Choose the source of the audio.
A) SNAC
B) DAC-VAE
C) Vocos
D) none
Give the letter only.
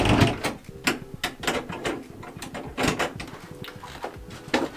D